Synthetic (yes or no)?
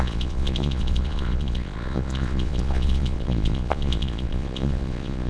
yes